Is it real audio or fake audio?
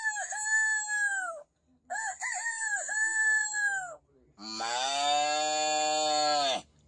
real